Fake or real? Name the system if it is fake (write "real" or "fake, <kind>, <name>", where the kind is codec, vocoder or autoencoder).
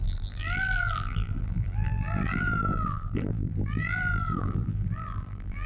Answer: fake, vocoder, BigVGAN v2